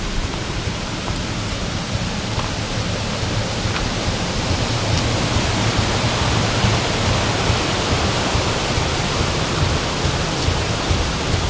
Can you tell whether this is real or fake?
real